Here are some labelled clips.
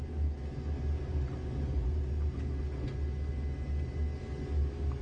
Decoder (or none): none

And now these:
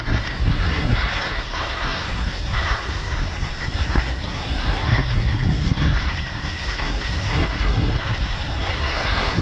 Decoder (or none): codec, SNAC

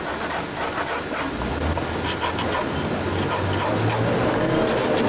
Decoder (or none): none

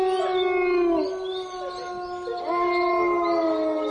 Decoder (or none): none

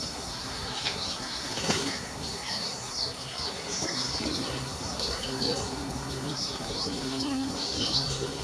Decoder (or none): codec, SNAC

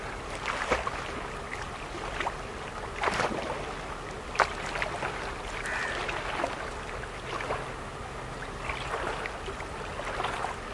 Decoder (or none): none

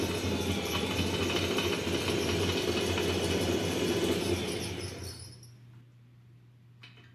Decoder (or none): none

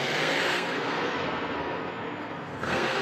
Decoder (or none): codec, SNAC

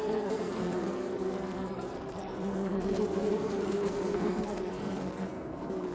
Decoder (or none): codec, SNAC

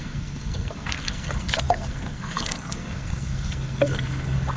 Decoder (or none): codec, SNAC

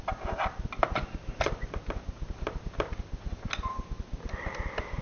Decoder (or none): none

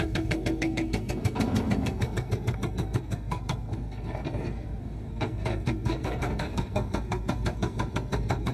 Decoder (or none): codec, SNAC